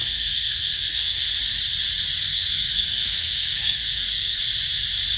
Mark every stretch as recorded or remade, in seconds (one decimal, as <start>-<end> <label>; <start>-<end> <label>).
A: 0.0-1.3 remade; 1.3-2.3 recorded; 2.3-4.4 remade; 4.4-5.2 recorded